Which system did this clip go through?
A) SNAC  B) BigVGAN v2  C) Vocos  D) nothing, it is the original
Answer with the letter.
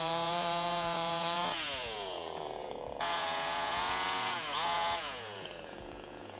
C